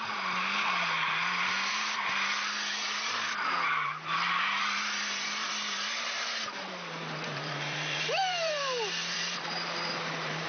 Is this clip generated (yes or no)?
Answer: yes